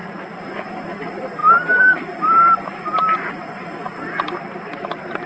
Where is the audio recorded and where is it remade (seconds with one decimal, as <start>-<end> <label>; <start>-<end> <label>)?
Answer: 0.0-5.3 recorded